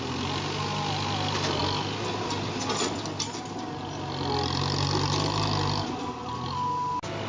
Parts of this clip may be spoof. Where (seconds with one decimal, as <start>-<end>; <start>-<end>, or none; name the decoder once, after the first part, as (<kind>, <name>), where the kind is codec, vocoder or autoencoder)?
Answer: none